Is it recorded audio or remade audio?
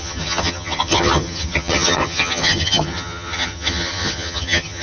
remade